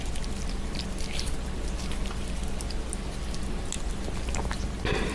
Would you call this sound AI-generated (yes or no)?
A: no